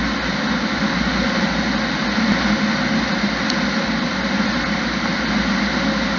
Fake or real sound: real